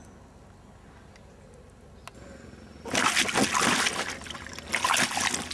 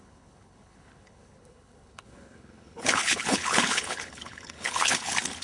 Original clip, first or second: first